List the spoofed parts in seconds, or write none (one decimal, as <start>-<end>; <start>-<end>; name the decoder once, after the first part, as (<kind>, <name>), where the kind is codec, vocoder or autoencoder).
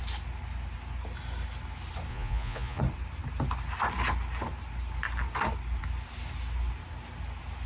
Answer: 2.1-2.8 (vocoder, Vocos)